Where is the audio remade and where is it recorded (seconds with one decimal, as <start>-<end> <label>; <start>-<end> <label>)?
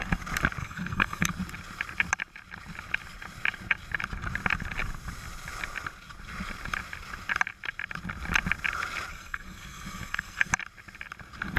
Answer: 0.0-0.6 recorded; 0.6-1.3 remade; 1.3-9.1 recorded; 9.1-10.5 remade; 10.5-11.6 recorded